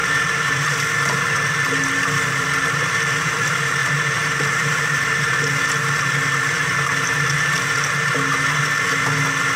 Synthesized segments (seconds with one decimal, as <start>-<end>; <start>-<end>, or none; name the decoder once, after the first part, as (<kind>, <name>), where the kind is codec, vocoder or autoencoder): 0.0-3.3 (vocoder, BigVGAN v2); 3.8-5.5